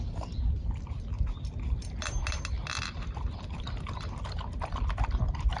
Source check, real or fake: real